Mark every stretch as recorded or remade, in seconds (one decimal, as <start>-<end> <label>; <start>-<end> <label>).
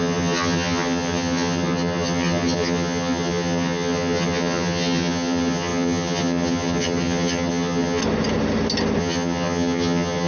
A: 0.0-8.0 remade; 8.0-9.0 recorded; 9.0-10.3 remade